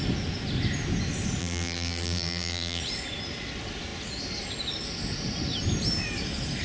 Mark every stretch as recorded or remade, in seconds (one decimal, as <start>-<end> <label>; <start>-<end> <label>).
0.0-1.4 recorded; 1.4-2.8 remade; 2.8-6.6 recorded